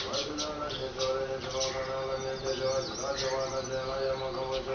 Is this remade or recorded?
recorded